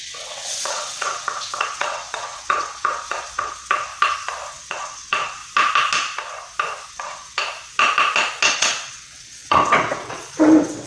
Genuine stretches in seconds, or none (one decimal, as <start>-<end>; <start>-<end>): 3.9-4.5; 5.4-6.9; 7.4-8.5